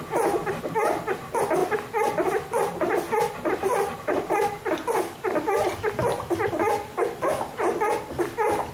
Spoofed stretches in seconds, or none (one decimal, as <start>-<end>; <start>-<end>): none